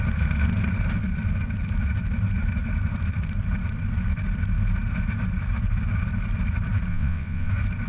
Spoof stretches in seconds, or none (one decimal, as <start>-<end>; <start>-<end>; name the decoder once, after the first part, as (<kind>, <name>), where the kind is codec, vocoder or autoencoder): 6.9-7.5 (vocoder, WaveNeXt)